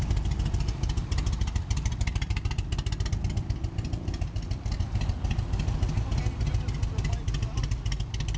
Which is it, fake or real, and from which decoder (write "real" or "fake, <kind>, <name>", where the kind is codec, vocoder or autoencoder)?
real